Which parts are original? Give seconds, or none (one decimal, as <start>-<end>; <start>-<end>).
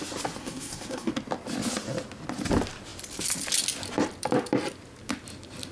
0.0-0.4; 1.1-5.7